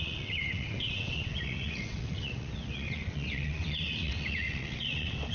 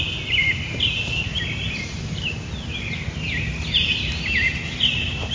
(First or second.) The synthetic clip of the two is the first